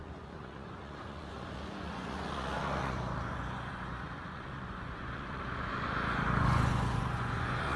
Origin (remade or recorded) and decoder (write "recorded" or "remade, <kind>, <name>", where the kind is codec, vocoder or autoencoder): remade, vocoder, Vocos